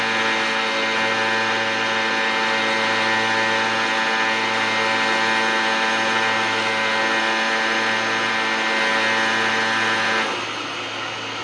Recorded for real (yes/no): yes